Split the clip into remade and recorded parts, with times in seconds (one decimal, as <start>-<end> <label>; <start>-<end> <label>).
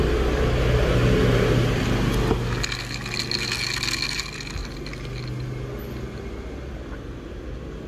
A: 0.0-7.9 recorded